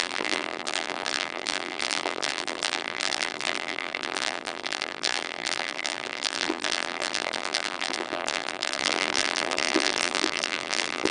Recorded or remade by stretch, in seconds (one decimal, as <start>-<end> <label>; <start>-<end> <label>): 0.0-11.1 remade